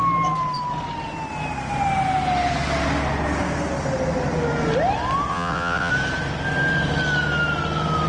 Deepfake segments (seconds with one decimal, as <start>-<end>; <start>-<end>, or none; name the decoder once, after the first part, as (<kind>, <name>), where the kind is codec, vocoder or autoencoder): 5.3-5.9 (vocoder, WaveNeXt)